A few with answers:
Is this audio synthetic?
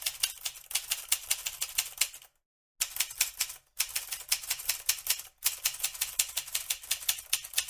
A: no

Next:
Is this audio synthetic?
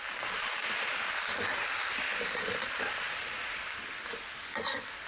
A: no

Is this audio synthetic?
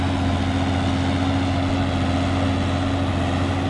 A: no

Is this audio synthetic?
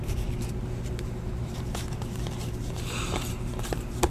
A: yes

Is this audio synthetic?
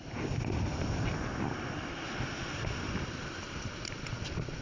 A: no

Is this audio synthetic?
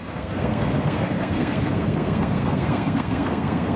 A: yes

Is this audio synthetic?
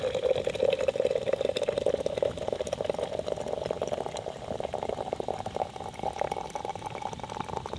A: no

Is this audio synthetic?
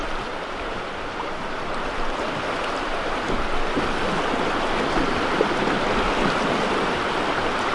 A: no